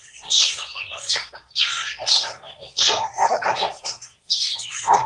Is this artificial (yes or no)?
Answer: yes